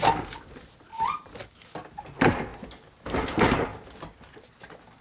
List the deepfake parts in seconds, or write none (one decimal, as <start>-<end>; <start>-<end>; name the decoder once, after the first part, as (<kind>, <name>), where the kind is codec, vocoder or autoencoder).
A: none